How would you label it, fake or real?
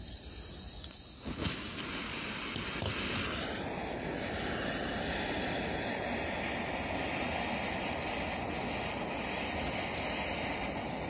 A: real